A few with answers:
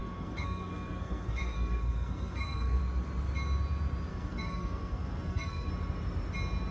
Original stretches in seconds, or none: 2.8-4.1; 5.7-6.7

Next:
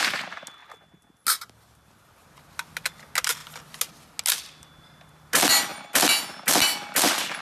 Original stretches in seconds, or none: 0.0-7.4

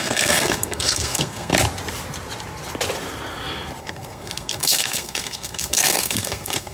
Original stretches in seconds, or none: 1.5-3.8

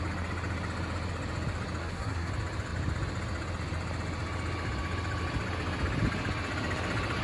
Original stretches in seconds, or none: 0.0-1.8; 2.3-7.2

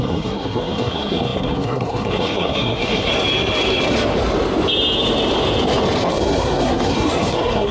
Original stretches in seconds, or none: 3.1-6.1

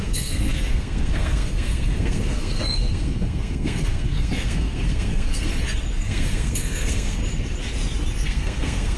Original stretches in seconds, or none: 5.5-6.0; 7.2-8.2